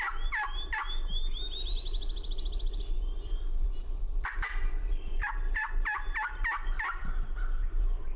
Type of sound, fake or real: real